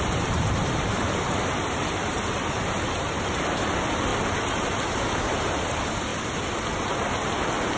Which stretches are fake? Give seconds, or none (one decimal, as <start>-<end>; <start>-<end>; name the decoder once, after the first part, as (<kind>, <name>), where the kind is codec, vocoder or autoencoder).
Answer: 0.0-4.1 (vocoder, BigVGAN v2); 4.9-6.1